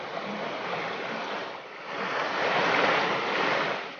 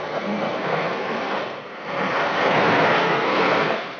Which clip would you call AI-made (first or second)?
second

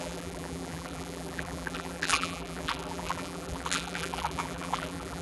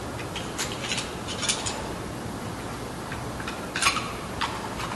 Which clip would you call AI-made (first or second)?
first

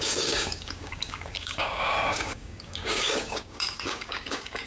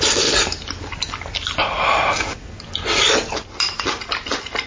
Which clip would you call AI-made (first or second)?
first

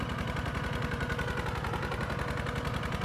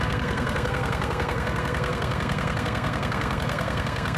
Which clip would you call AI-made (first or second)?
second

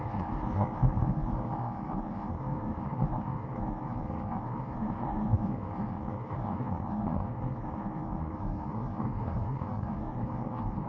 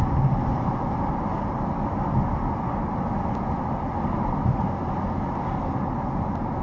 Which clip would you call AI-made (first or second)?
first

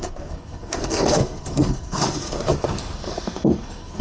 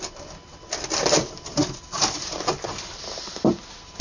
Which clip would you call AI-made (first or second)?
first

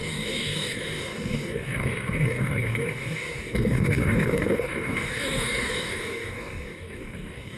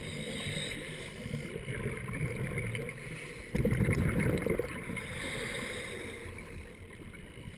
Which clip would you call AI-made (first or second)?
first